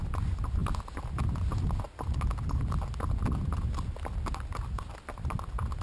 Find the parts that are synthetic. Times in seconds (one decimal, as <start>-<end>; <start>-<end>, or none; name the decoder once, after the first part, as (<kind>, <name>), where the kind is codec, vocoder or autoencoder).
none